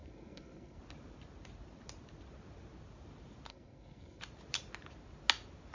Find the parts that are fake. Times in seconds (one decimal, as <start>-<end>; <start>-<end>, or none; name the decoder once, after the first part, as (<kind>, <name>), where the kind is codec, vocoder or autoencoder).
0.0-0.8 (codec, SNAC); 3.5-4.2